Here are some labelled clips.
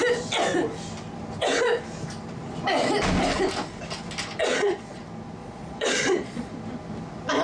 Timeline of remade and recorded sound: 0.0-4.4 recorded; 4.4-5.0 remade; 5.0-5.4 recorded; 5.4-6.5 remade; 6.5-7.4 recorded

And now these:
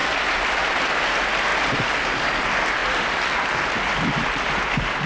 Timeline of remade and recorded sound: 0.0-0.9 remade; 0.9-1.5 recorded; 1.5-2.4 remade; 2.4-2.8 recorded; 2.8-4.6 remade; 4.6-5.1 recorded

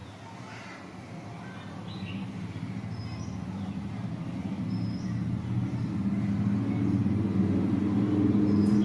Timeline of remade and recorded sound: 0.0-8.8 recorded

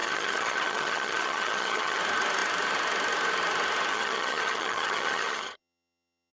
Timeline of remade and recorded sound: 0.0-2.0 remade; 2.0-3.9 recorded; 3.9-6.3 remade